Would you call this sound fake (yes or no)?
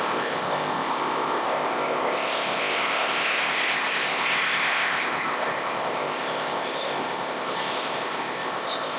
yes